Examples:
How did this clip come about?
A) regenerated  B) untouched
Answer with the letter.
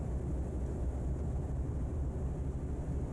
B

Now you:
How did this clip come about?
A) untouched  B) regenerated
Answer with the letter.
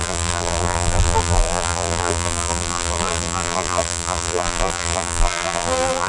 B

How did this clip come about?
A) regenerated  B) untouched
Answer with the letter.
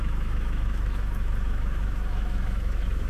A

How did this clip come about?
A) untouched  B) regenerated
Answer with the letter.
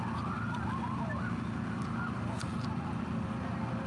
A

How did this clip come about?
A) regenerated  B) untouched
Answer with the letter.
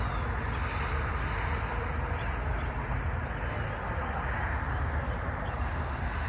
B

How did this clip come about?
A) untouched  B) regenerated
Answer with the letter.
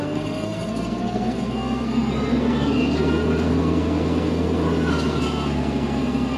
B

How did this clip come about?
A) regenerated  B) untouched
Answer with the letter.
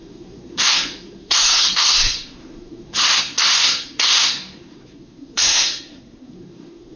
A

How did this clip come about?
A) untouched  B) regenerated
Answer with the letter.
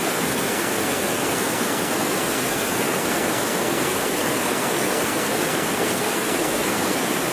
B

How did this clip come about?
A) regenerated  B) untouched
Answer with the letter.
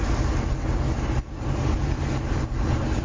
A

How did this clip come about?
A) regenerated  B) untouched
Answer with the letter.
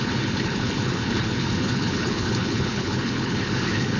A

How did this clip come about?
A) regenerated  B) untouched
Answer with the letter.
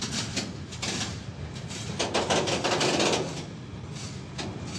B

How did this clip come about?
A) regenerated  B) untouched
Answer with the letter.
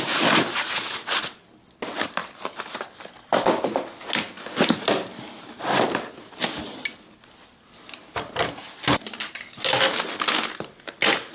B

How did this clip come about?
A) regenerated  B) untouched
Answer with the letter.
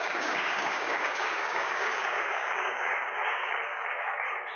A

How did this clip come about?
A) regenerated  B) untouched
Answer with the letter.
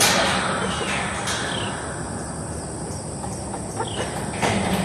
B